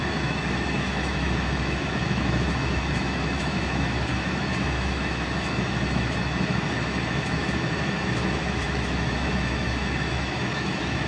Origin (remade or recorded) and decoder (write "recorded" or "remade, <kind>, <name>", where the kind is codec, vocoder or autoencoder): remade, autoencoder, DAC-VAE